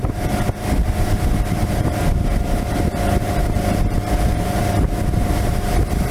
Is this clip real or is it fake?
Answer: real